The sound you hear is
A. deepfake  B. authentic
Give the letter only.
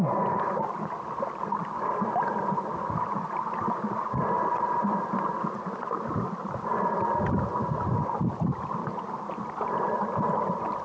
B